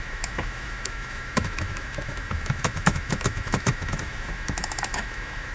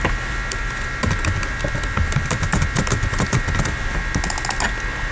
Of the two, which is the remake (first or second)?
first